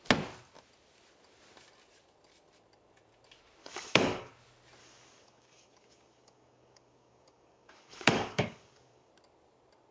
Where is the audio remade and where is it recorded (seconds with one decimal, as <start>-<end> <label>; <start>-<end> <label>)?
0.0-3.6 recorded; 3.6-4.3 remade; 4.3-4.8 recorded; 4.8-9.1 remade; 9.1-9.9 recorded